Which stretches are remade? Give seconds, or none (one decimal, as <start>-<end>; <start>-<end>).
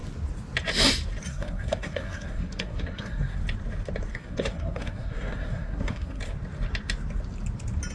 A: 1.3-3.4; 4.1-6.2